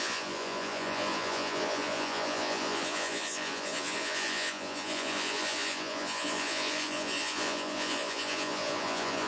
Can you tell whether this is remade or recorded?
remade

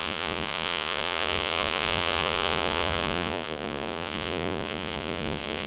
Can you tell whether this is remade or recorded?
remade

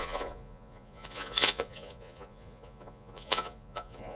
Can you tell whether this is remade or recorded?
remade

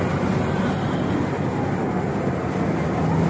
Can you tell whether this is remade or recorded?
recorded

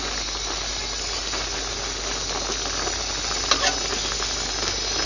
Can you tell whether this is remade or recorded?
recorded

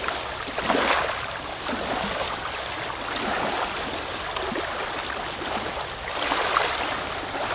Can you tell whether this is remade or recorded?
recorded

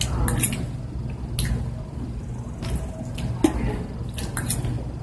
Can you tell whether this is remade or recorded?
recorded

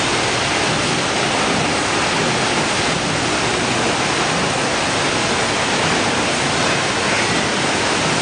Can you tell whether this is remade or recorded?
recorded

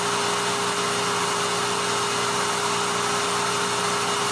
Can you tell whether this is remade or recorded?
recorded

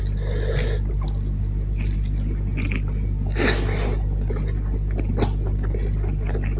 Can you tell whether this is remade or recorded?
recorded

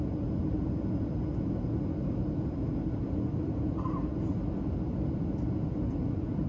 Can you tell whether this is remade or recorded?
recorded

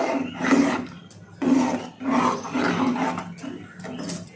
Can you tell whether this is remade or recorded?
recorded